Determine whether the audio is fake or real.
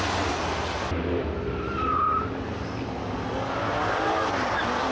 real